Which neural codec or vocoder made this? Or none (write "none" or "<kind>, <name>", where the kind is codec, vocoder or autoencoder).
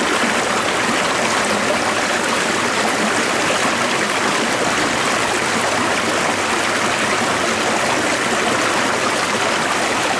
none